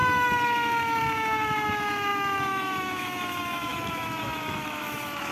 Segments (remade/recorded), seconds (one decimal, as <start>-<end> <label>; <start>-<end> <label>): 0.0-5.3 remade